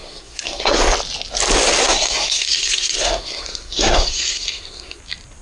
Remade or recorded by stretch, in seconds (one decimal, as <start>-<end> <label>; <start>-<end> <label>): 0.0-0.8 remade; 0.8-1.8 recorded; 1.8-5.0 remade; 5.0-5.4 recorded